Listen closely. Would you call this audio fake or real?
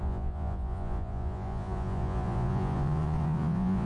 fake